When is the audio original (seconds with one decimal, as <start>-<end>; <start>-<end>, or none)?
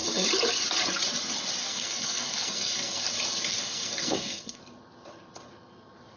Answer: 0.0-1.6; 3.1-3.5; 4.6-6.2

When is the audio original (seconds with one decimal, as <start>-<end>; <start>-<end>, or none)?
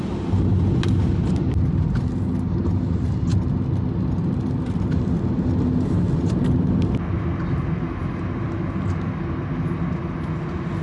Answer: 0.0-10.8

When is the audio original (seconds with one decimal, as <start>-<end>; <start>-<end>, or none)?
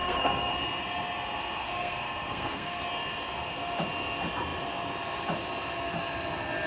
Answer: 0.5-1.6; 2.8-6.7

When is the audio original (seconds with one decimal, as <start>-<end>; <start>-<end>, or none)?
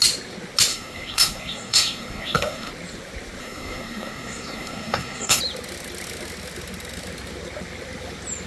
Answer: 0.0-0.7; 2.7-3.4; 5.4-8.5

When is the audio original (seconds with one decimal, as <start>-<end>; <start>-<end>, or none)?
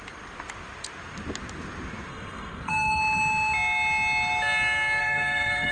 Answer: 0.0-2.1; 3.0-5.0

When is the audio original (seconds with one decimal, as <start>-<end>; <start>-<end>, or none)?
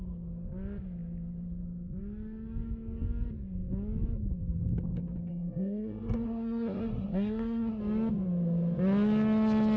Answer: 0.0-5.3; 7.8-9.8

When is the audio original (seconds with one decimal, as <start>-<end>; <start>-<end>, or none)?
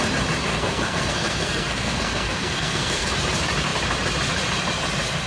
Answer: 0.0-0.5; 3.1-5.3